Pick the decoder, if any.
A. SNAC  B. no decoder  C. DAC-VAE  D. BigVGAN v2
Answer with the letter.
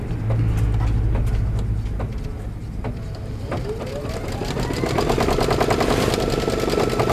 B